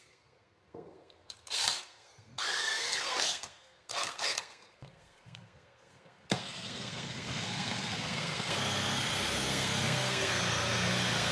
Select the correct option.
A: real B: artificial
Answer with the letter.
B